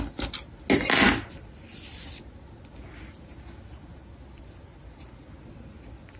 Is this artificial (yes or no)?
no